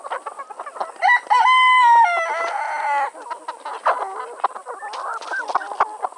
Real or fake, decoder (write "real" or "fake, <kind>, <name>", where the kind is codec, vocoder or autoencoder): real